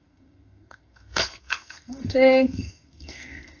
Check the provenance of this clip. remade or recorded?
remade